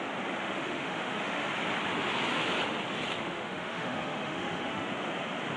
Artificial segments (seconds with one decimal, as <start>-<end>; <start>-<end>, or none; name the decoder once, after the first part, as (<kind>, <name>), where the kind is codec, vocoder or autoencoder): 0.4-1.5 (autoencoder, DAC-VAE); 3.2-4.9